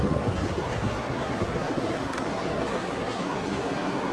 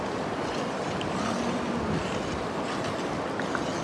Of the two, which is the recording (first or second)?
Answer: second